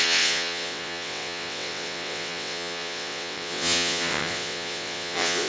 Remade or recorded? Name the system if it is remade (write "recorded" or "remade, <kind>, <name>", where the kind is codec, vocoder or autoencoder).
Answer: remade, vocoder, WaveNeXt